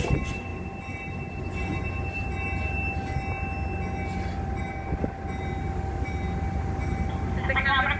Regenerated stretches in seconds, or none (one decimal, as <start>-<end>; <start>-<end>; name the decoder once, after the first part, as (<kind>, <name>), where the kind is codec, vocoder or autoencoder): none

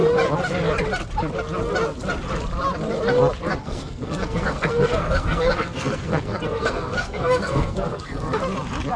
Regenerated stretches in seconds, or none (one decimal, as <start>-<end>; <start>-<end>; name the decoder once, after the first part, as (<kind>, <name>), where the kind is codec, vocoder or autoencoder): 3.6-8.4 (codec, SNAC)

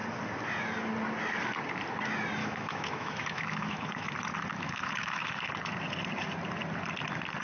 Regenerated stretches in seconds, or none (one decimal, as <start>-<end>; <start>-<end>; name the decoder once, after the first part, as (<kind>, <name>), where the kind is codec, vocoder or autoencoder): 2.4-4.1 (autoencoder, DAC-VAE); 4.5-5.5

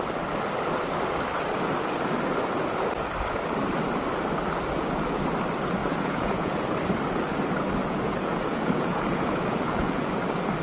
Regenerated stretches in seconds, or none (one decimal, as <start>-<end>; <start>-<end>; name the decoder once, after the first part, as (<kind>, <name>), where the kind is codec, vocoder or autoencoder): 5.8-6.7 (vocoder, Vocos); 7.8-10.2

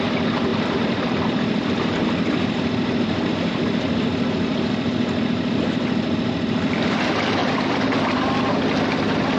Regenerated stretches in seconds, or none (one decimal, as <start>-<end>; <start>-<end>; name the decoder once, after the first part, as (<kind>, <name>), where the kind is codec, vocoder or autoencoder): 0.5-2.1 (vocoder, BigVGAN v2); 7.4-8.4

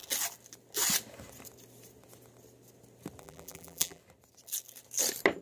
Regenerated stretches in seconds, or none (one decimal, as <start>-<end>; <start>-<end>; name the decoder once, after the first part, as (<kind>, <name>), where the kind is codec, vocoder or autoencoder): 3.2-4.0 (vocoder, BigVGAN v2)